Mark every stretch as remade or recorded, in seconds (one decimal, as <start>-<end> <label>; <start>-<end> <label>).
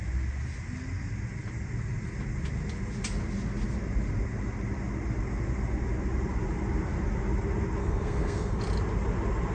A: 0.0-7.8 recorded; 7.8-8.6 remade; 8.6-9.5 recorded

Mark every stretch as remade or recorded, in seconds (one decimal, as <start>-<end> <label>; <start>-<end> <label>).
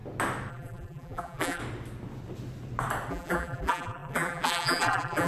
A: 0.0-0.5 recorded; 0.5-1.6 remade; 1.6-3.1 recorded; 3.1-5.3 remade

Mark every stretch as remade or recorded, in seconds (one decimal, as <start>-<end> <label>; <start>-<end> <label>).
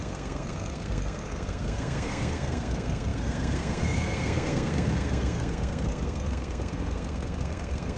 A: 0.0-8.0 remade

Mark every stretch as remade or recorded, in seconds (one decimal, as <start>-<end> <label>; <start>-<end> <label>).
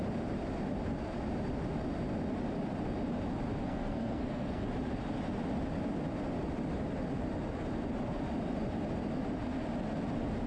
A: 0.0-3.6 recorded; 3.6-4.6 remade; 4.6-10.5 recorded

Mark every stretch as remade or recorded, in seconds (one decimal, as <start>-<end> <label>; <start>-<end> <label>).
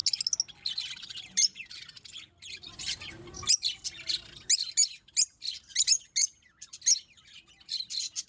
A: 0.0-8.3 recorded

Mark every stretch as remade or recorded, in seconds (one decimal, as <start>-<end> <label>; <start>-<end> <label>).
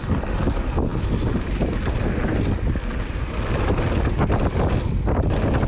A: 0.0-5.7 recorded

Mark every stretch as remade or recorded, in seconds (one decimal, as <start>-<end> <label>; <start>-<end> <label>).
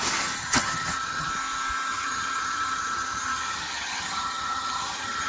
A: 0.0-0.4 recorded; 0.4-1.3 remade; 1.3-1.9 recorded; 1.9-5.3 remade